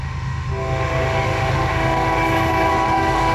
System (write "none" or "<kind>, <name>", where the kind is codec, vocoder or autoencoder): autoencoder, DAC-VAE